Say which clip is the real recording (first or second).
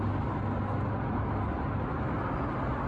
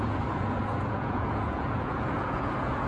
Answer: first